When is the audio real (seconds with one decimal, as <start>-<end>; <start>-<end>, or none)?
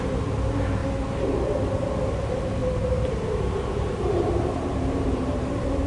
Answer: 0.8-1.8; 2.6-3.3